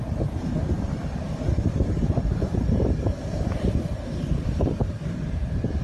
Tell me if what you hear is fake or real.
fake